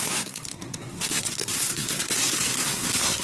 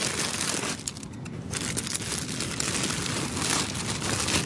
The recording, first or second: second